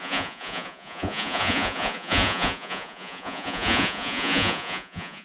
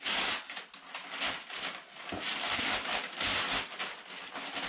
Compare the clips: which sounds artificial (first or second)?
first